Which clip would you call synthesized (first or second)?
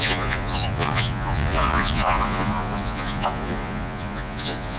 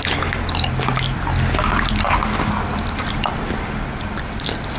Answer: first